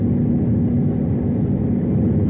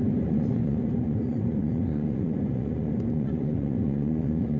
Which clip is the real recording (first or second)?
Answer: first